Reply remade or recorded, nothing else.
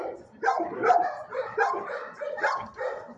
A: remade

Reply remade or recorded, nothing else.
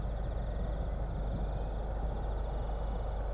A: recorded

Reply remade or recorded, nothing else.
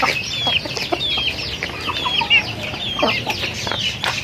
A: recorded